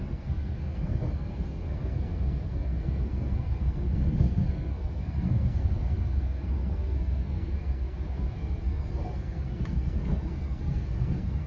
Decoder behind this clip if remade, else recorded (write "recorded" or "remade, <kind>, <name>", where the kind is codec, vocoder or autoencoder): remade, codec, SNAC